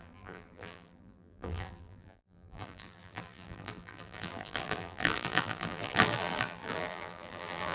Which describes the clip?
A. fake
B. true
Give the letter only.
A